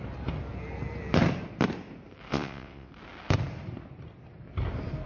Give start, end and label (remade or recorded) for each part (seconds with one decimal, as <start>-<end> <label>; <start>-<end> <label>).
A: 0.0-2.3 recorded; 2.3-2.9 remade; 2.9-5.1 recorded